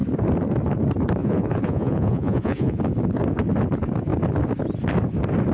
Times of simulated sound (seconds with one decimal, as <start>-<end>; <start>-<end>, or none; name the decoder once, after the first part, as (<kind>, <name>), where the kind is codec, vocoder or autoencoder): 1.2-2.8 (vocoder, Vocos)

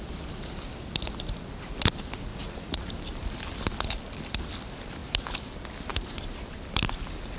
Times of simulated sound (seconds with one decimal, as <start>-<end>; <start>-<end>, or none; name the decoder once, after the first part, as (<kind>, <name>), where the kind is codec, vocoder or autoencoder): 2.3-2.9 (vocoder, Vocos)

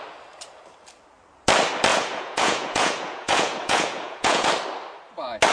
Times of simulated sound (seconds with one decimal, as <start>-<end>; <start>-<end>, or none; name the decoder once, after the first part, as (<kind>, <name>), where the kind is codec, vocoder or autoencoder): 1.9-4.5 (vocoder, Vocos)

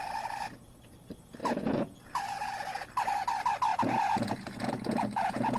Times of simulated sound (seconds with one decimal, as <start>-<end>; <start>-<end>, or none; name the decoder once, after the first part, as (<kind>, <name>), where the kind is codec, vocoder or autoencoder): 1.4-2.2 (vocoder, Vocos); 3.7-5.6